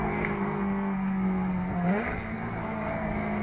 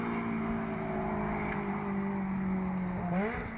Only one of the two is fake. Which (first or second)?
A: first